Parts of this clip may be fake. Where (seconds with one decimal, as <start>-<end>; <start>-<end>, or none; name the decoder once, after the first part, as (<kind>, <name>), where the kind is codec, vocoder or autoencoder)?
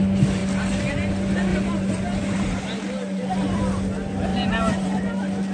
1.5-3.6 (vocoder, BigVGAN v2); 4.3-5.0